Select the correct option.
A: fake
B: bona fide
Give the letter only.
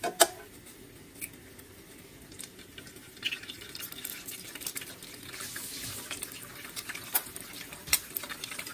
B